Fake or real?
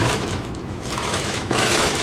fake